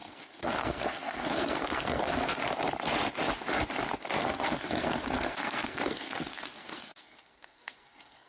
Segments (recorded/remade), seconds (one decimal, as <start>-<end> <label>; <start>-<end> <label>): 0.0-2.4 remade; 2.4-4.2 recorded; 4.2-8.3 remade